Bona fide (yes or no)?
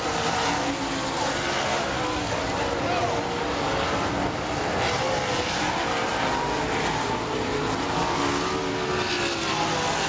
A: yes